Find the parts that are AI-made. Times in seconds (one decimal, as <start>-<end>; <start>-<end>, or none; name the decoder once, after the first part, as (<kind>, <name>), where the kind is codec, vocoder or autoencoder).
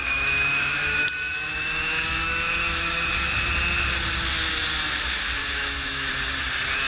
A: 0.0-3.3 (autoencoder, DAC-VAE); 5.4-6.1